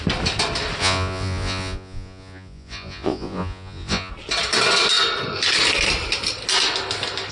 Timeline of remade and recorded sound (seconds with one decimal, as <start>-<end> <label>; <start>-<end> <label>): 0.0-0.8 recorded; 0.8-4.1 remade; 4.1-7.3 recorded